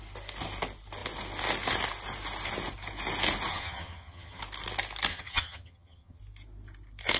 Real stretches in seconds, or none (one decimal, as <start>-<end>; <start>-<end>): 0.0-3.5; 4.4-5.1; 6.2-7.2